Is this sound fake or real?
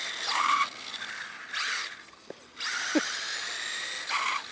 real